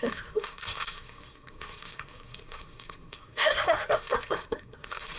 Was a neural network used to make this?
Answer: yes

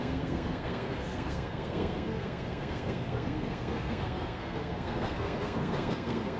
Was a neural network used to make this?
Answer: yes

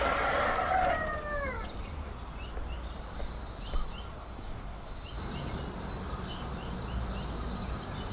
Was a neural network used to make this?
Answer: no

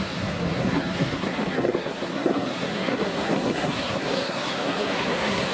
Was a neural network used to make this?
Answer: yes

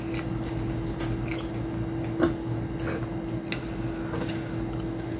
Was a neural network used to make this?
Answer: no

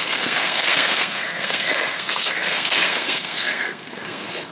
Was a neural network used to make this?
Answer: yes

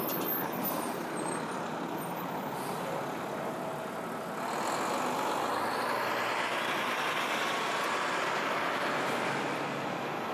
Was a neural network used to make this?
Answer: no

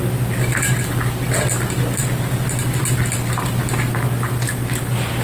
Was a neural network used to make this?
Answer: no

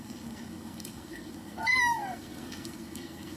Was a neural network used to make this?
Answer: yes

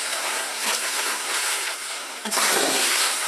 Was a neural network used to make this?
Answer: yes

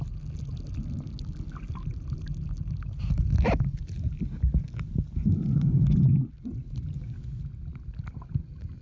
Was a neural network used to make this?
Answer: no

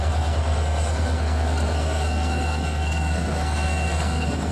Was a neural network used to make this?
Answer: yes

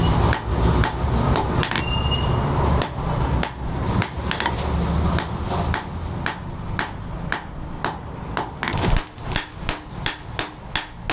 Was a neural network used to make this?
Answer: no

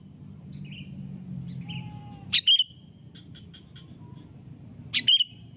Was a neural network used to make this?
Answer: no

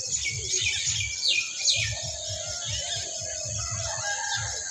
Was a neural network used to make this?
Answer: no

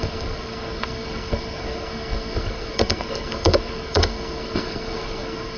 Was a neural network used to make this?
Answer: yes